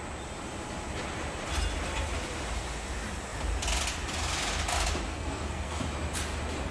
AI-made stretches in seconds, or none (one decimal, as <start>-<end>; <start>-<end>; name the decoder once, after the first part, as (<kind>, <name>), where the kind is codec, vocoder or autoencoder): 5.1-5.8 (codec, SNAC)